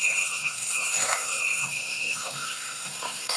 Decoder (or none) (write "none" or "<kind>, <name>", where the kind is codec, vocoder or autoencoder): codec, SNAC